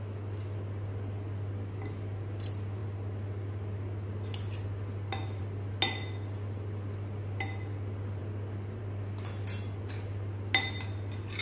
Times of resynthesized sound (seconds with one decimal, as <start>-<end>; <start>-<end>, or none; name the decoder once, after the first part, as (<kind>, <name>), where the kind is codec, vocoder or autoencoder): none